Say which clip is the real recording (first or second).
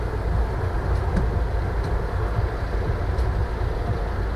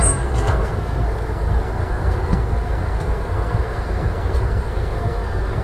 first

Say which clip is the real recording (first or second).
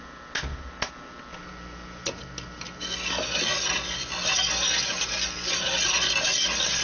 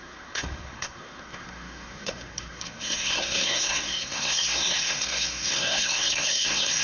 first